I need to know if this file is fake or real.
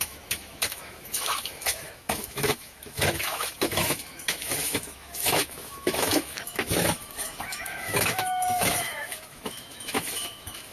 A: fake